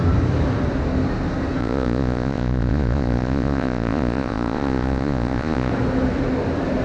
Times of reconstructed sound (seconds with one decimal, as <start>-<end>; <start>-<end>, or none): 1.6-5.7